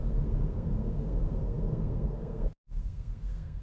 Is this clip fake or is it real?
fake